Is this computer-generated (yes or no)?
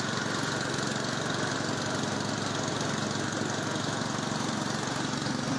no